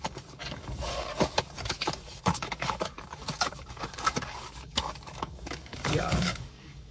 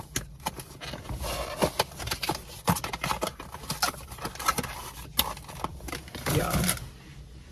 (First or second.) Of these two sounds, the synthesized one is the first